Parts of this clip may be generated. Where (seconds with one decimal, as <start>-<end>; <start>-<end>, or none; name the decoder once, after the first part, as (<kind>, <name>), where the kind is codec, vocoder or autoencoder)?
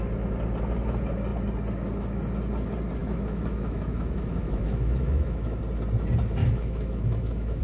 3.0-5.6 (autoencoder, DAC-VAE); 6.4-7.6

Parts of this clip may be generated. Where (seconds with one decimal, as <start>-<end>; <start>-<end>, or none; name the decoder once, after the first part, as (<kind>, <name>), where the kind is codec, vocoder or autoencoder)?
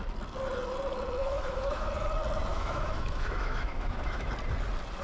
1.2-1.9 (autoencoder, DAC-VAE); 2.5-4.3